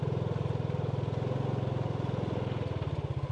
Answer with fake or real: real